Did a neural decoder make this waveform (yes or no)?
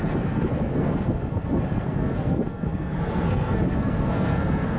yes